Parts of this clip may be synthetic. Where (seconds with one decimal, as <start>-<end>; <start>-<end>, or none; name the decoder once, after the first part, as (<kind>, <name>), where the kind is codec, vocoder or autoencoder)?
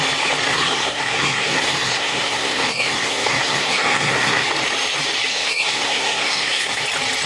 0.5-4.5 (codec, SNAC); 5.3-6.8